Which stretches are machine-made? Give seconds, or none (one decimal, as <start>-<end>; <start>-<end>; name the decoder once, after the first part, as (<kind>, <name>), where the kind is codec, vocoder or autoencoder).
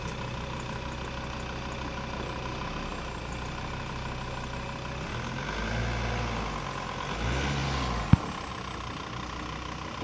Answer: none